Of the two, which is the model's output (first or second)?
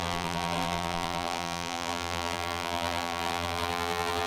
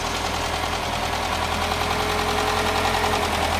first